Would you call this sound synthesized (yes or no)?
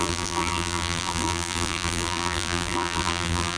yes